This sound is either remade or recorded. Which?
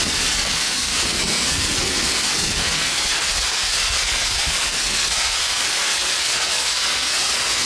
remade